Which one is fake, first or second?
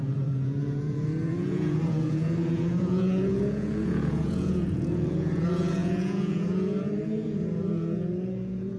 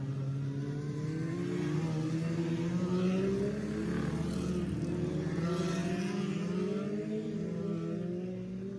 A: first